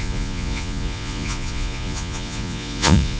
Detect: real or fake fake